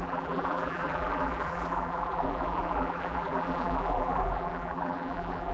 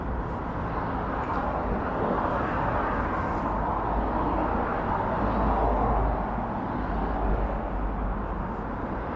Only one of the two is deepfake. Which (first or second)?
first